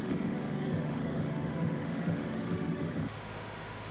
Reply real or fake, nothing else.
fake